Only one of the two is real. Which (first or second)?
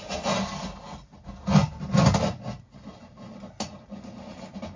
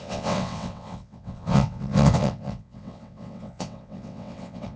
first